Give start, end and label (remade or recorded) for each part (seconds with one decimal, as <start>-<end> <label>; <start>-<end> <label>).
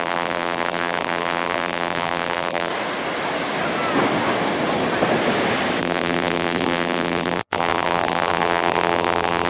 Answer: 0.0-2.7 remade; 2.7-5.8 recorded; 5.8-9.5 remade